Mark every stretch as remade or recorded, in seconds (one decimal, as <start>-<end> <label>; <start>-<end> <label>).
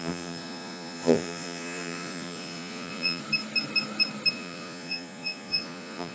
0.0-3.2 remade; 3.2-4.3 recorded; 4.3-6.1 remade